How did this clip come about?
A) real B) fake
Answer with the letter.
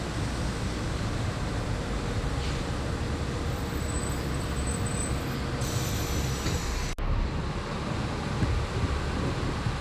A